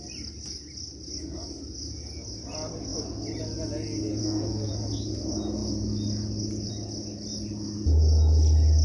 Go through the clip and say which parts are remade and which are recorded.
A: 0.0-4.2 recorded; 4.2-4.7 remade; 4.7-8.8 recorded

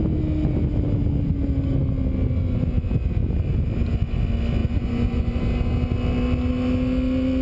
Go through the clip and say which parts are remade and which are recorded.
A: 0.0-4.6 recorded; 4.6-5.4 remade; 5.4-7.4 recorded

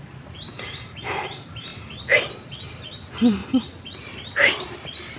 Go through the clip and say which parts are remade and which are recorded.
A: 0.0-3.4 remade; 3.4-3.9 recorded; 3.9-5.2 remade

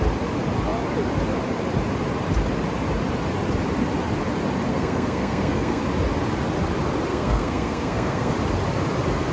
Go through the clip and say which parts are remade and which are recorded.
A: 0.0-4.7 recorded; 4.7-5.8 remade; 5.8-7.1 recorded; 7.1-8.3 remade; 8.3-9.3 recorded